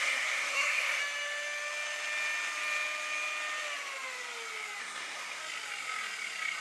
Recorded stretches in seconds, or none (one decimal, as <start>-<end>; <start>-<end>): 1.0-4.8; 5.4-6.6